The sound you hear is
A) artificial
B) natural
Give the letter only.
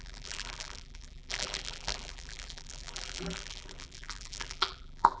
A